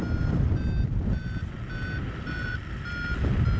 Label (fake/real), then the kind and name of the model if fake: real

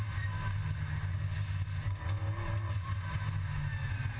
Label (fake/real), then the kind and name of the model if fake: real